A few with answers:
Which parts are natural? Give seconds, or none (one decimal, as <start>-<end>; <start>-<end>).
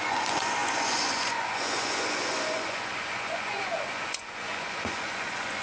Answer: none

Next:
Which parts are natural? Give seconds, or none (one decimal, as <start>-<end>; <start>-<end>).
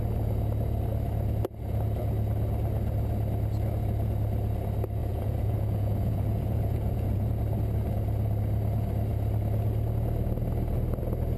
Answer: 0.0-5.0; 7.4-11.4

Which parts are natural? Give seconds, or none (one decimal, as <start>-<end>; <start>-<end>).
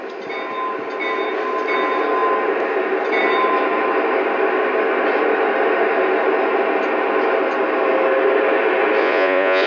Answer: 0.0-9.0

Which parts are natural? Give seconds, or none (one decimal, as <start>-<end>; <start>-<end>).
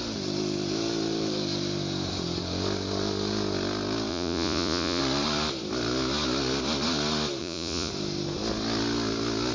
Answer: 0.0-4.1; 5.0-7.4; 7.9-9.5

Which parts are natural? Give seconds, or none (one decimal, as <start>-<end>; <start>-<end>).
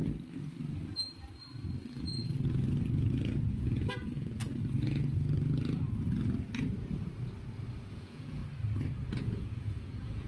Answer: 0.0-3.5; 4.4-7.9; 8.4-9.2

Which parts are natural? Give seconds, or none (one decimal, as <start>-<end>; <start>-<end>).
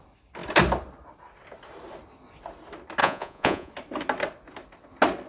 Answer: 0.0-3.0; 3.7-5.3